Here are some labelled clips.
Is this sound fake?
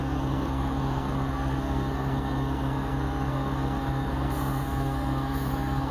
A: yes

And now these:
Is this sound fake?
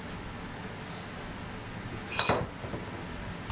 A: no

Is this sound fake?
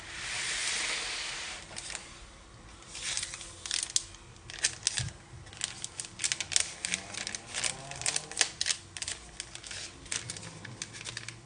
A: no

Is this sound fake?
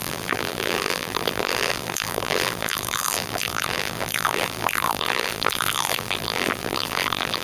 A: yes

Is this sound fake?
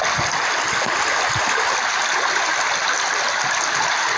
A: no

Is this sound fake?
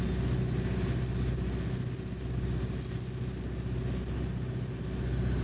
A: no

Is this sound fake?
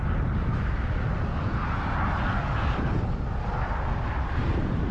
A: no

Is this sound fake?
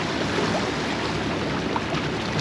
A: no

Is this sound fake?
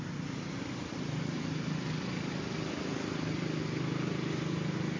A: no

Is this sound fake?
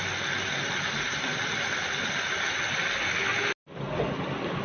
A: no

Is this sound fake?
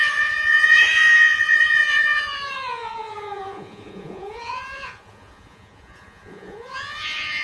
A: yes